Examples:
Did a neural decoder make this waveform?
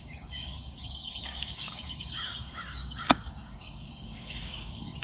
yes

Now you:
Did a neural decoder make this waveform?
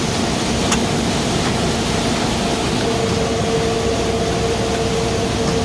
no